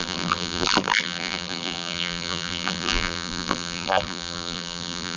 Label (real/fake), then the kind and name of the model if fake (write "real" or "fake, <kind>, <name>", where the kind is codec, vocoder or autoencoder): fake, vocoder, BigVGAN v2